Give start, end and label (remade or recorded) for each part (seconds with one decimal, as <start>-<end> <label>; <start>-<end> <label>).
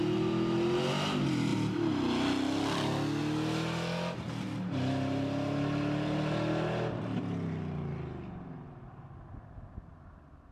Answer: 0.0-10.5 recorded